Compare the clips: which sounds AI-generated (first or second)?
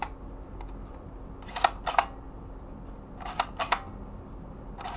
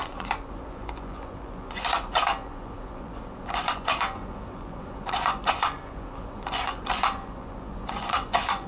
second